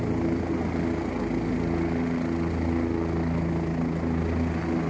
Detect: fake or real real